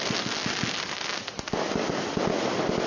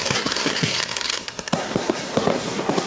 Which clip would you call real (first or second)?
first